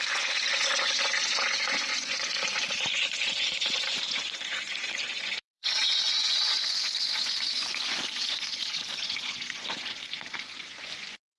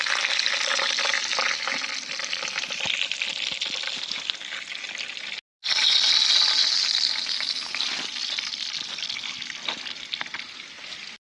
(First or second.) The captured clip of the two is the second